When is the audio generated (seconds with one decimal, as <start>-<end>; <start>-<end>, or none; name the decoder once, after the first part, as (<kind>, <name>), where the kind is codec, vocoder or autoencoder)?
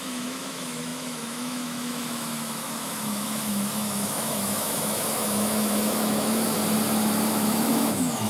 0.0-6.6 (autoencoder, DAC-VAE); 7.3-8.3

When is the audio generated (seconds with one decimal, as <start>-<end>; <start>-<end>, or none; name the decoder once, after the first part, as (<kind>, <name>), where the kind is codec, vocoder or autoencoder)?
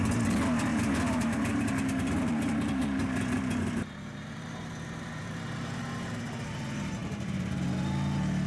0.7-5.8 (vocoder, BigVGAN v2); 7.0-7.6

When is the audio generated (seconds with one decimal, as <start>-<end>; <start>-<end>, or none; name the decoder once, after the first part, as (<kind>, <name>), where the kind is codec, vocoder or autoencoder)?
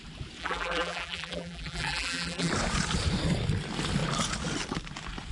0.4-2.5 (vocoder, BigVGAN v2)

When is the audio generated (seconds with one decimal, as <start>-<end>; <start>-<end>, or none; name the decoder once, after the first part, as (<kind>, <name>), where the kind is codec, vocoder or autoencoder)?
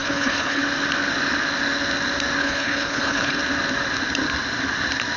0.0-0.6 (codec, HILCodec); 2.4-3.4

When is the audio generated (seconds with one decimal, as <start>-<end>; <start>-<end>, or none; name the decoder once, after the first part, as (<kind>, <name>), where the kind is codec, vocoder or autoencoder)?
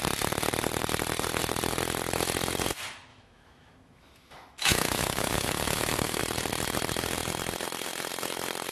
3.1-6.2 (autoencoder, DAC-VAE)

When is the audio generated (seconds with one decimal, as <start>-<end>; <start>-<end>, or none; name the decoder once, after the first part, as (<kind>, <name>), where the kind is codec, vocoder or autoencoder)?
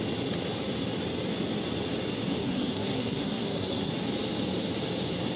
2.4-3.9 (codec, SNAC)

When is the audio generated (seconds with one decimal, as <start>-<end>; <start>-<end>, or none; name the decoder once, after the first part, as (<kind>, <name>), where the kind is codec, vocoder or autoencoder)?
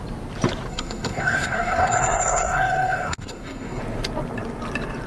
0.7-3.8 (codec, SNAC)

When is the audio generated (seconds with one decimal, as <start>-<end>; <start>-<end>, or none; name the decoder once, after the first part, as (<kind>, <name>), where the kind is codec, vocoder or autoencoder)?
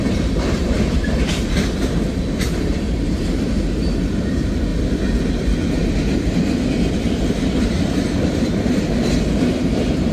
0.0-4.7 (vocoder, BigVGAN v2); 5.3-5.8; 8.3-10.1